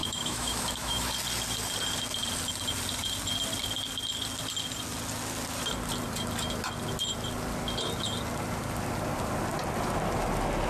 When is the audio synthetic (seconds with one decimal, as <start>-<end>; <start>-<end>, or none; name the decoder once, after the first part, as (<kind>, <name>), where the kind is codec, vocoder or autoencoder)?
0.0-1.1 (autoencoder, DAC-VAE)